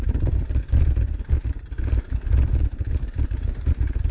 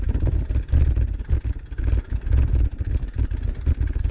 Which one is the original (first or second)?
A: second